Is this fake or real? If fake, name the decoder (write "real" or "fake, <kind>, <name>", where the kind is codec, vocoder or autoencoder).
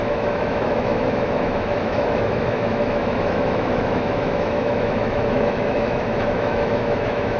fake, autoencoder, DAC-VAE